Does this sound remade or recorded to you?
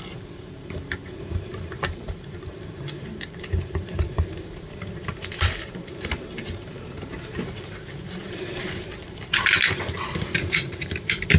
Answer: remade